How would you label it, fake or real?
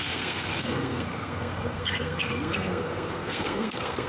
fake